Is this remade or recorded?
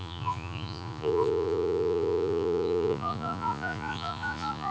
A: remade